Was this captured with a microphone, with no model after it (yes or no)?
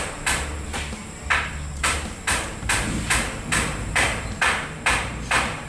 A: no